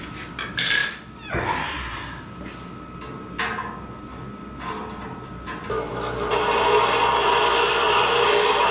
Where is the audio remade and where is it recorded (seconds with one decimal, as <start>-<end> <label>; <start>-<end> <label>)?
0.0-0.8 remade; 0.8-5.9 recorded; 5.9-8.7 remade